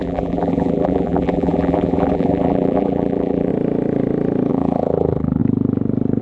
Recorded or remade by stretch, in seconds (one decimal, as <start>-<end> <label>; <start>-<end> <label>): 0.0-3.5 remade; 3.5-4.5 recorded; 4.5-5.4 remade; 5.4-6.2 recorded